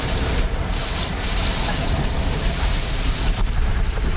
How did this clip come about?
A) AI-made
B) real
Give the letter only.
A